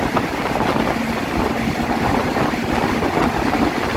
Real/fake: real